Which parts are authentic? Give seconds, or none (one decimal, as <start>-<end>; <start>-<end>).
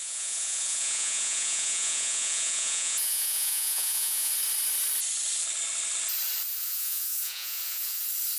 4.3-6.5; 8.0-8.4